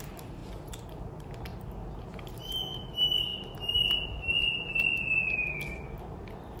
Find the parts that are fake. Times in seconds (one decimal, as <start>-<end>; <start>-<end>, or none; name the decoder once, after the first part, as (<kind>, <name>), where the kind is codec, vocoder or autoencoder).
none